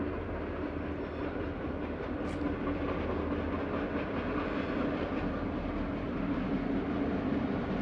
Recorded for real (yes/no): yes